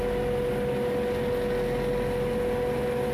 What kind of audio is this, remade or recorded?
recorded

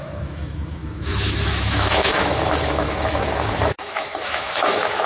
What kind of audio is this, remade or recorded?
remade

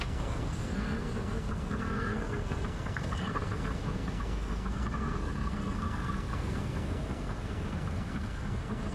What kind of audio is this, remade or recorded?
remade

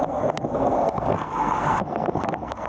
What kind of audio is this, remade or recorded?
remade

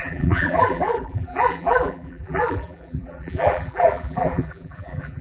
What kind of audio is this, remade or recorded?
remade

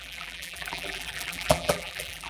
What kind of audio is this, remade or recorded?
remade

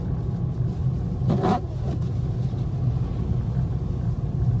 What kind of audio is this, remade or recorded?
recorded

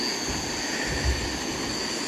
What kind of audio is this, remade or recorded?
recorded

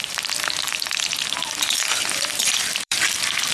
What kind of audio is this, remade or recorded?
remade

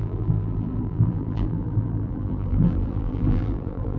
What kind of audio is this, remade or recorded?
remade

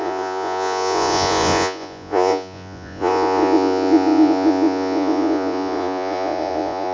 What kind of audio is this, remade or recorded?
remade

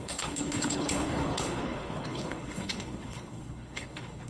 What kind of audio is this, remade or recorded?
remade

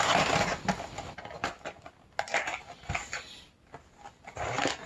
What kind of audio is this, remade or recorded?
recorded